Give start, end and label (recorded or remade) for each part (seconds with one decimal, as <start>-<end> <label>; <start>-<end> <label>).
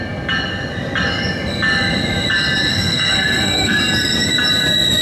0.0-2.7 recorded; 2.7-3.8 remade; 3.8-5.0 recorded